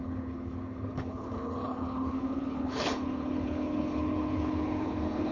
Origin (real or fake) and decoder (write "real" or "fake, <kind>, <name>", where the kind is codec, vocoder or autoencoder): fake, codec, HILCodec